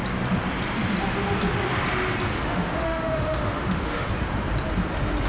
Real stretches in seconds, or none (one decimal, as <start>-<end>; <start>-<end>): 0.0-2.3; 4.1-5.3